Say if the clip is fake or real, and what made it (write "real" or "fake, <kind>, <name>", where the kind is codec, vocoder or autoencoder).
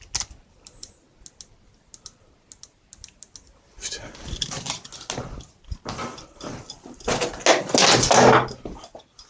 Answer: real